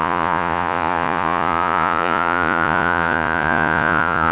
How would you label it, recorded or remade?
remade